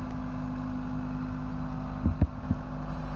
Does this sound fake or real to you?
real